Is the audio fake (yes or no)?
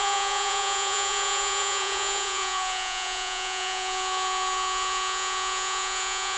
yes